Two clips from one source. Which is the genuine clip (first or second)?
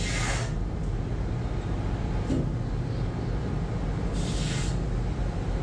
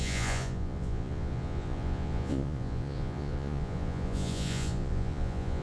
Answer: first